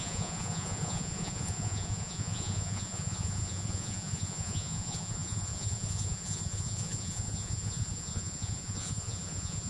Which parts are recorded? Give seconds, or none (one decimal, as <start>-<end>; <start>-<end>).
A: none